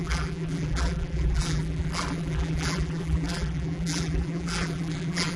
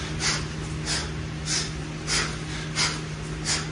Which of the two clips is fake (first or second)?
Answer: first